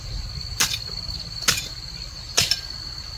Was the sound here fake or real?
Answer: real